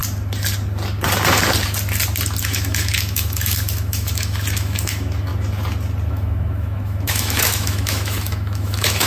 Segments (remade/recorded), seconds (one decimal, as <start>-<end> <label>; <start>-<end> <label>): 0.0-2.4 recorded; 2.4-5.3 remade; 5.3-6.1 recorded; 6.1-9.1 remade